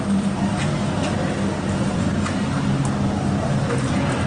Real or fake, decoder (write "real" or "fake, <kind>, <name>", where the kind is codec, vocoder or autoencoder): real